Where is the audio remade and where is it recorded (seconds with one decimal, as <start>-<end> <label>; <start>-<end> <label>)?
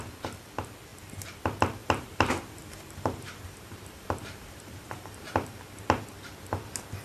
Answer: 0.0-0.9 recorded; 0.9-1.4 remade; 1.4-1.8 recorded; 1.8-6.0 remade; 6.0-7.0 recorded